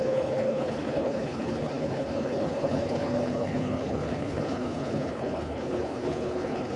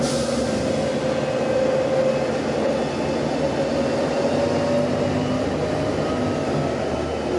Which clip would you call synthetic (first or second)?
first